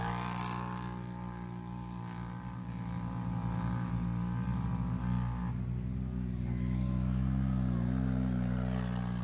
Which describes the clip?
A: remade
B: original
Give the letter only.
B